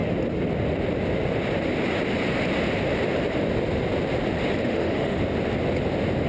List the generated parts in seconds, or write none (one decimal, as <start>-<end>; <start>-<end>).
4.6-5.2